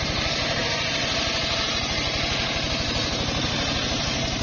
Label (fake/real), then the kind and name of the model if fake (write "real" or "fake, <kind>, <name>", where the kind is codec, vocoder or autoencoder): real